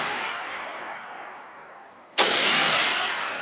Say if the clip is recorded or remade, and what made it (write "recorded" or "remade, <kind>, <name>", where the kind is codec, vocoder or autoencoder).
remade, codec, DAC